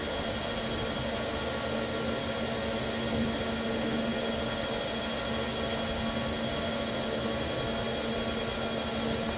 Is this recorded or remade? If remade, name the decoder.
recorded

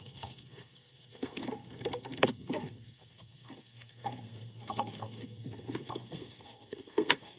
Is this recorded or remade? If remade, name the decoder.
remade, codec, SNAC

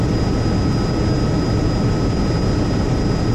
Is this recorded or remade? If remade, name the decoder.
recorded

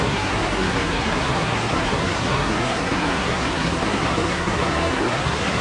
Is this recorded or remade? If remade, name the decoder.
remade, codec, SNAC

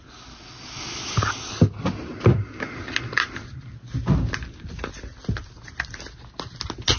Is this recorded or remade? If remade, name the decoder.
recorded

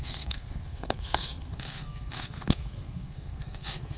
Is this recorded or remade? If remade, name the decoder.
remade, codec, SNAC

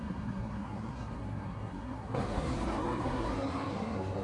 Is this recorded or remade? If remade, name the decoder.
remade, codec, SNAC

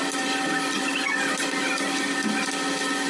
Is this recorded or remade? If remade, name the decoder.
recorded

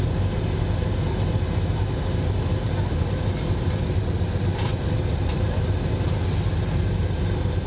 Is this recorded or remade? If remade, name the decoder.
recorded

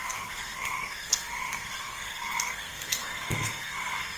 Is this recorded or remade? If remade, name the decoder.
remade, codec, SNAC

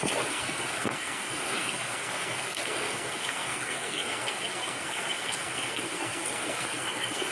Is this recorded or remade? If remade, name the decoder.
remade, codec, SNAC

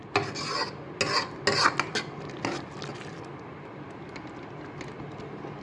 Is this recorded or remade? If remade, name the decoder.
recorded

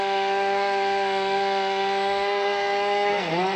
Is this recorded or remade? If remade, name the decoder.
remade, codec, SNAC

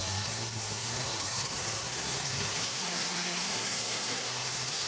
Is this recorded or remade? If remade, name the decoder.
remade, codec, SNAC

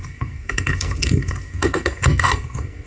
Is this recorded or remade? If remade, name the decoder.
remade, codec, SNAC